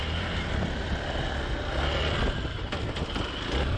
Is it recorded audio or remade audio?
recorded